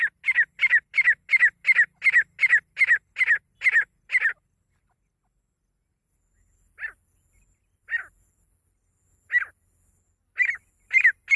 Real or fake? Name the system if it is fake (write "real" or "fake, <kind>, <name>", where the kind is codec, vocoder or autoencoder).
real